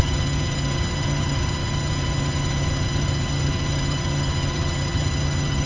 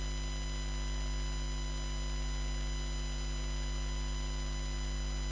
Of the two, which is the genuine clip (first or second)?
second